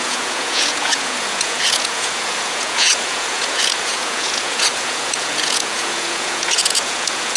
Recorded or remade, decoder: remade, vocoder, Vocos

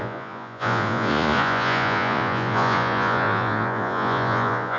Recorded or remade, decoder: remade, vocoder, Vocos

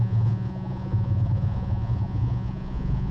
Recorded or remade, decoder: remade, vocoder, Vocos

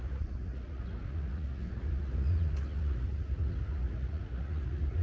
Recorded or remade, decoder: remade, vocoder, Vocos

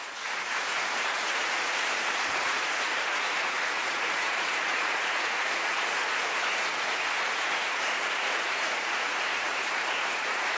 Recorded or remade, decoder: remade, vocoder, Vocos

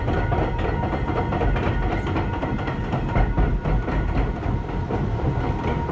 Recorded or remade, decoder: recorded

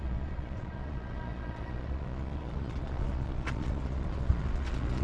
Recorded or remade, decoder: remade, vocoder, Vocos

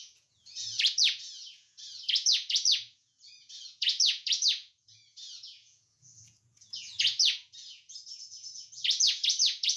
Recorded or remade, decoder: remade, vocoder, Vocos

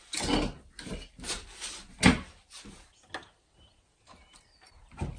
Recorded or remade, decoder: recorded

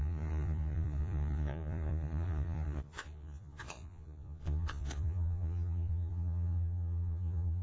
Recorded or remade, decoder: remade, vocoder, Vocos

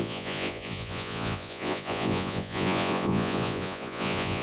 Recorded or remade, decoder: remade, vocoder, Vocos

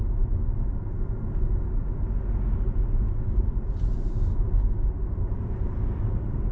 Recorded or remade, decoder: recorded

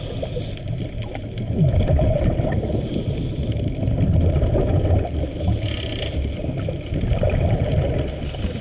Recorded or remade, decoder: recorded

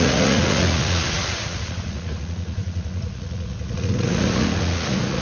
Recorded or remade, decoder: remade, vocoder, Vocos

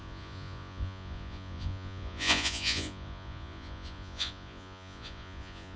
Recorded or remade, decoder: remade, vocoder, Vocos